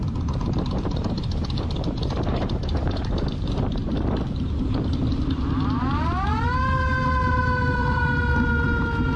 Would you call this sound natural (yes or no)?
no